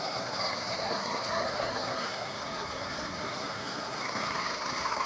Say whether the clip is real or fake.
fake